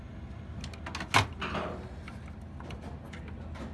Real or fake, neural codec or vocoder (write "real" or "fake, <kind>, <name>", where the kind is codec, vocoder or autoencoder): real